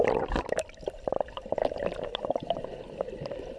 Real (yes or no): yes